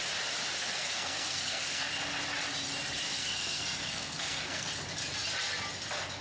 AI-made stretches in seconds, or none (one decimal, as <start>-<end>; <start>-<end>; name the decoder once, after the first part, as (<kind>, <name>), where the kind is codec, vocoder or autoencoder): 0.6-1.9 (codec, SNAC); 3.1-4.7